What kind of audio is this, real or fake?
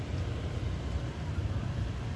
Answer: real